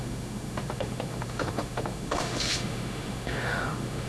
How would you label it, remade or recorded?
remade